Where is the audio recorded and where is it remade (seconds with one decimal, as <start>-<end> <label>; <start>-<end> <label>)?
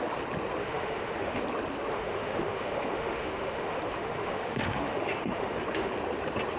0.0-0.6 recorded; 0.6-1.4 remade; 1.4-1.9 recorded; 1.9-5.9 remade; 5.9-6.6 recorded